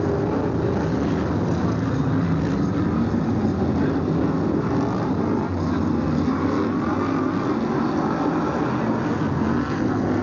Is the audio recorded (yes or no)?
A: yes